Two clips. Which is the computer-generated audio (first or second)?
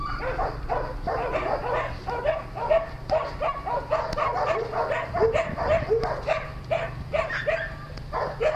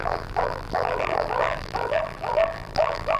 second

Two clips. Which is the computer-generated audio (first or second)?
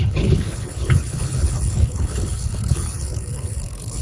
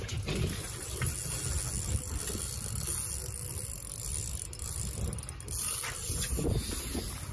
first